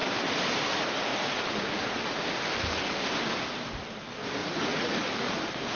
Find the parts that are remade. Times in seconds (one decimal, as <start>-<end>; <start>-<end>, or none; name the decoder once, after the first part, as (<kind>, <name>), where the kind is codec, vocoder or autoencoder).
1.1-2.2 (vocoder, Vocos); 4.4-5.0